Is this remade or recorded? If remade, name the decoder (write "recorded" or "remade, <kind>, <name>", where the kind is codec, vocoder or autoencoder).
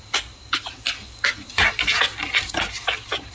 recorded